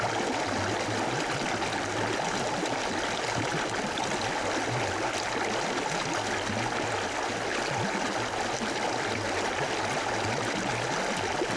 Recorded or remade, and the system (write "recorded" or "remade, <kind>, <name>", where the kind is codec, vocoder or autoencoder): recorded